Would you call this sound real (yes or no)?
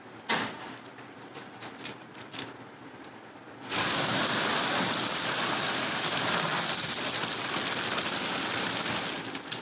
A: yes